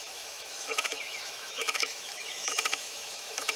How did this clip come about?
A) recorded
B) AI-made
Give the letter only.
B